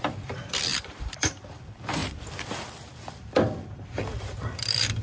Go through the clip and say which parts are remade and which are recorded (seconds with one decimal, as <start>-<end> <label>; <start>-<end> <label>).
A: 0.0-5.0 remade